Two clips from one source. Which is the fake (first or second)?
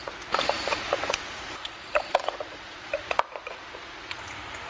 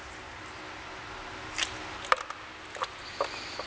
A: first